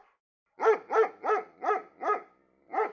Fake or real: real